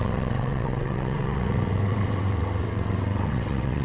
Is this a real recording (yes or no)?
no